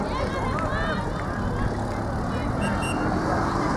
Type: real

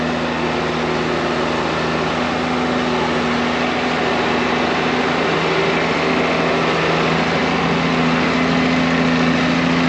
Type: real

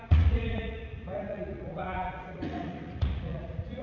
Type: fake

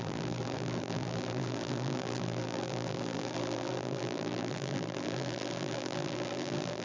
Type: fake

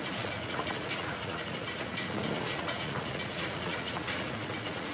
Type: fake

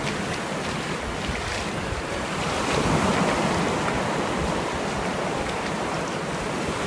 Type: real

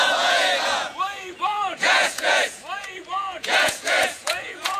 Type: fake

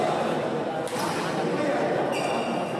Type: real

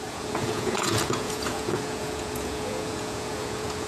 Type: fake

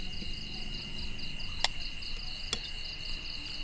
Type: real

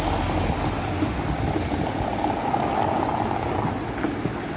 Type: real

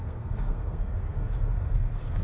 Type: fake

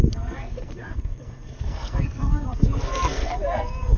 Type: fake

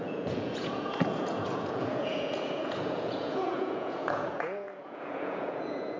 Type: fake